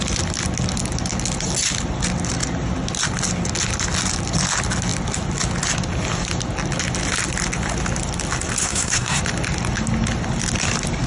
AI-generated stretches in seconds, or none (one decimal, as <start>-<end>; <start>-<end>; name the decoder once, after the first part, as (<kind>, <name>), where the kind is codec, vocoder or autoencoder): 8.6-9.2 (codec, SNAC)